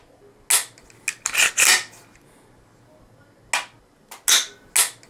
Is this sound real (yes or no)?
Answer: yes